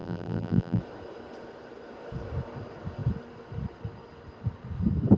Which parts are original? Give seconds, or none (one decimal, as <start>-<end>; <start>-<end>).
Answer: 0.8-5.2